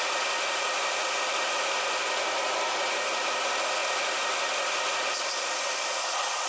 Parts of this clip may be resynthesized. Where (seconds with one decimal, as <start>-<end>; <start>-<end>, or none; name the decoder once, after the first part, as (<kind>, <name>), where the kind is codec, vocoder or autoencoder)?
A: none